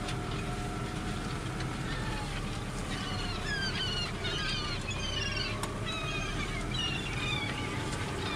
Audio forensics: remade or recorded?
recorded